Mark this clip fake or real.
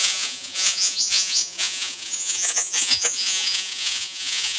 fake